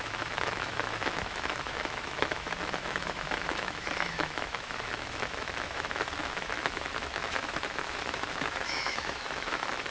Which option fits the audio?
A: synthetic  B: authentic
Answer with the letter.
A